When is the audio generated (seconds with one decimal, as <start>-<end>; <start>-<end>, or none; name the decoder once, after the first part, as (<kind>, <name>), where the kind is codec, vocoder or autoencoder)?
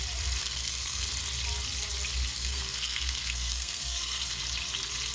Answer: 0.4-1.1 (codec, SNAC); 2.4-4.4